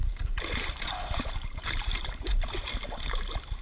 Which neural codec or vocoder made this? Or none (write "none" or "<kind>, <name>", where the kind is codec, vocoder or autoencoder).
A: vocoder, BigVGAN v2